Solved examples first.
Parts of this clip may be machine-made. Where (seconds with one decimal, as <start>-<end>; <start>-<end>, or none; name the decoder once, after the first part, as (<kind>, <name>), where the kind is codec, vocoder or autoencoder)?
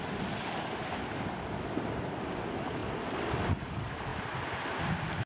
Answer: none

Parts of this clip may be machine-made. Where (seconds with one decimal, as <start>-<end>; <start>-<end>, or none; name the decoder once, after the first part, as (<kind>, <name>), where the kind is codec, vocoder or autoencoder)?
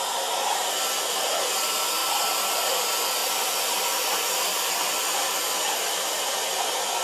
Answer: 2.0-2.7 (vocoder, BigVGAN v2); 3.2-6.5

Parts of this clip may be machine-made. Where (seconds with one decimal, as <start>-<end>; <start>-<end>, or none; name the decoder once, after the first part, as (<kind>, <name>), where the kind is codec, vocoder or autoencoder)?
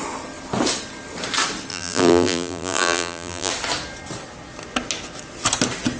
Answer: 1.7-3.5 (vocoder, BigVGAN v2)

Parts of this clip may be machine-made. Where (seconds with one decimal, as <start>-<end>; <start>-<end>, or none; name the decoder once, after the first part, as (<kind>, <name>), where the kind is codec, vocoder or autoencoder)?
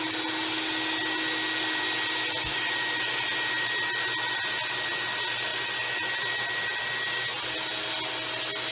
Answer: none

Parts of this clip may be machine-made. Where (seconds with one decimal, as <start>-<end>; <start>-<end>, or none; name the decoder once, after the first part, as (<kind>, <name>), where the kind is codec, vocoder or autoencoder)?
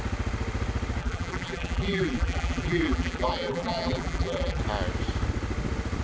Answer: 1.0-4.6 (vocoder, BigVGAN v2)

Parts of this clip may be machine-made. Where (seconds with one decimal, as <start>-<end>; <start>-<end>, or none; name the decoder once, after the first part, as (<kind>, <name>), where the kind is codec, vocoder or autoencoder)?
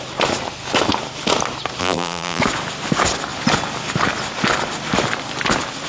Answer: 1.8-2.4 (vocoder, BigVGAN v2)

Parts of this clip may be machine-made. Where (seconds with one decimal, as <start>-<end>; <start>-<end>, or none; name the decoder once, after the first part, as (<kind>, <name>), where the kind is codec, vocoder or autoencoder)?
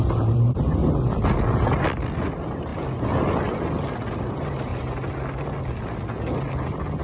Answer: 0.0-0.8 (vocoder, BigVGAN v2); 2.3-2.7; 4.2-4.7